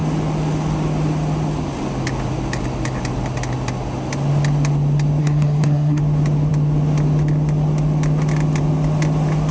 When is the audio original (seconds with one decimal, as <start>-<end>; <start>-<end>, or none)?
0.0-5.2; 6.0-9.5